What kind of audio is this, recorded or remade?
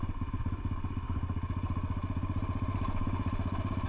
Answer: recorded